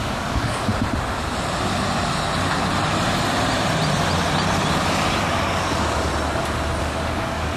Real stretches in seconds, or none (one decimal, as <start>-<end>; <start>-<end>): 0.7-5.2; 6.1-6.8